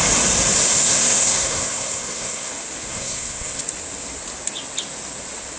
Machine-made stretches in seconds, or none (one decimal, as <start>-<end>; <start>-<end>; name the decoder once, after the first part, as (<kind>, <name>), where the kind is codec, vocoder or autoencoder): 0.8-2.5 (codec, SNAC); 2.9-3.6